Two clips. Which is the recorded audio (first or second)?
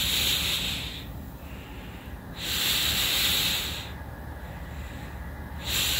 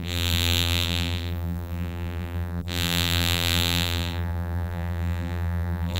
first